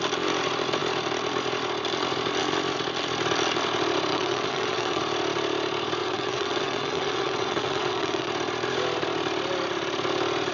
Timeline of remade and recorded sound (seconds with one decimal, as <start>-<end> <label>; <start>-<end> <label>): 0.0-4.1 recorded; 4.1-5.0 remade; 5.0-6.0 recorded; 6.0-8.3 remade; 8.3-10.5 recorded